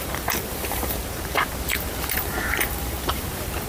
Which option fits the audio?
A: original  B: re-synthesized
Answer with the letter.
B